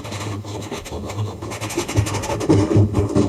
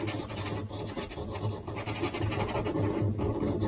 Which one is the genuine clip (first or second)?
second